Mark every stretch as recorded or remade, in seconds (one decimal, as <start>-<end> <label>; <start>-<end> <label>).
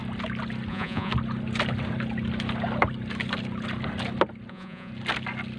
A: 0.0-0.7 recorded; 0.7-1.1 remade; 1.1-4.5 recorded; 4.5-4.9 remade; 4.9-5.6 recorded